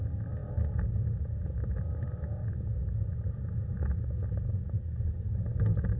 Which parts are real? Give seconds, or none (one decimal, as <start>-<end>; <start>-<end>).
0.0-6.0